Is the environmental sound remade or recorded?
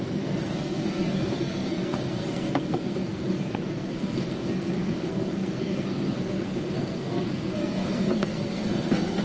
remade